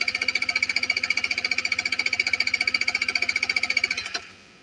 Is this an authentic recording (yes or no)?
yes